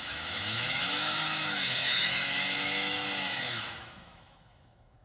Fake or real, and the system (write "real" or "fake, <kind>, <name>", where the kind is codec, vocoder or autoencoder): fake, autoencoder, DAC-VAE